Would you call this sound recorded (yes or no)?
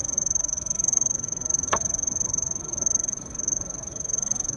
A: no